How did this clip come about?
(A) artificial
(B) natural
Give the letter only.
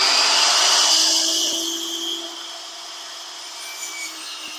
B